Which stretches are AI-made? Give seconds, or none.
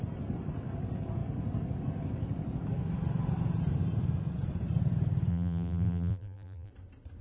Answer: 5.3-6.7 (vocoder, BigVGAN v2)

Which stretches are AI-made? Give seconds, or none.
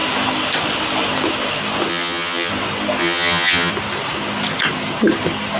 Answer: 1.9-2.5 (vocoder, HiFi-GAN); 3.0-3.7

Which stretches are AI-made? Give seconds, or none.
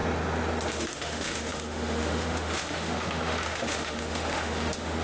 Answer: 0.7-5.0 (autoencoder, DAC-VAE)